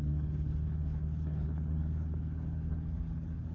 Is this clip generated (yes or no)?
yes